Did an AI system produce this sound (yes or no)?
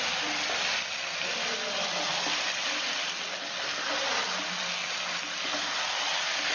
no